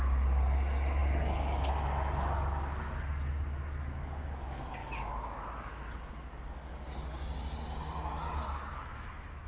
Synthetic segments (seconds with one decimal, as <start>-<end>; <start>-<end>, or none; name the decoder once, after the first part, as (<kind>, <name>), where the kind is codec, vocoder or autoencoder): 4.8-5.8 (autoencoder, DAC-VAE); 8.7-9.5